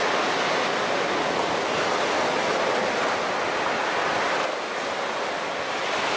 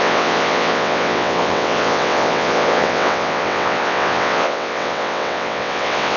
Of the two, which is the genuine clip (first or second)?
first